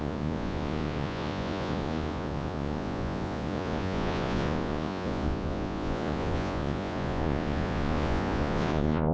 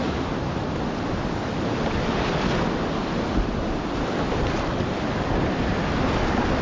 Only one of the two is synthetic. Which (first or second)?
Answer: first